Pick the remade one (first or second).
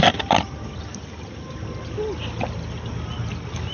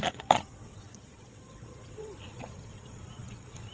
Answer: second